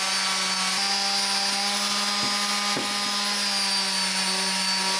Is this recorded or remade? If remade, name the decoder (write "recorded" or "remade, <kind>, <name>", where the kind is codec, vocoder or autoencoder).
recorded